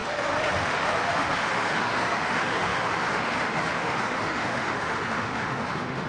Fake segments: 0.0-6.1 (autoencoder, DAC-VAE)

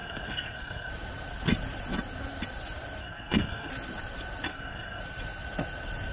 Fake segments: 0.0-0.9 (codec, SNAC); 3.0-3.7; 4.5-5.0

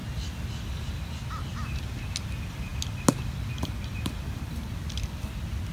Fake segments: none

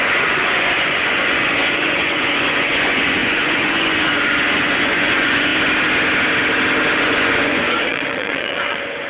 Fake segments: 0.0-5.5 (vocoder, Vocos); 7.0-9.1